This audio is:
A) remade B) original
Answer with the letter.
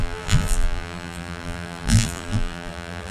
A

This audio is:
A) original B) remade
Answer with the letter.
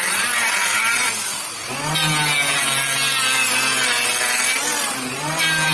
A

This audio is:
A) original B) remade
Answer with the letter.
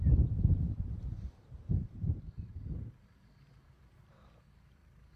B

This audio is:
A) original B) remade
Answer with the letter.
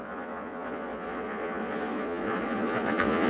B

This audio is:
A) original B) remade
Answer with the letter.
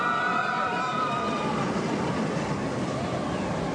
A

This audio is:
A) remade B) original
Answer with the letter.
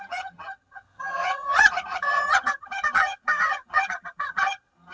A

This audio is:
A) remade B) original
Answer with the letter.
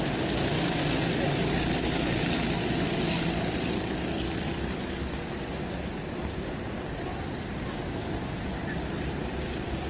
B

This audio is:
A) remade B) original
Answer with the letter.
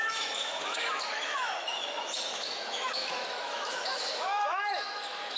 A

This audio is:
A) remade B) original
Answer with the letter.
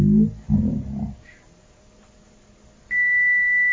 B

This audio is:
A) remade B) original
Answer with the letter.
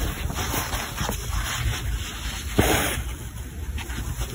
B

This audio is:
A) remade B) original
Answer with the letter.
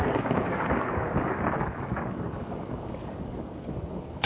A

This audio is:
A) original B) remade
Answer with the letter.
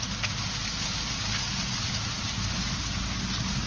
A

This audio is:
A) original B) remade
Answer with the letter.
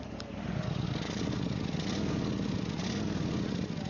A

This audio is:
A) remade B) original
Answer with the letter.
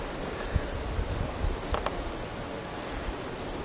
A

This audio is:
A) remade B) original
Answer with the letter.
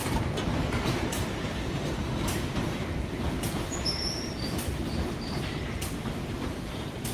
A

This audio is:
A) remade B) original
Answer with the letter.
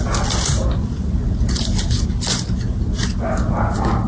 B